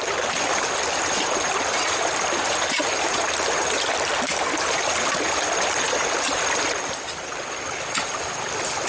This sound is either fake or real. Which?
real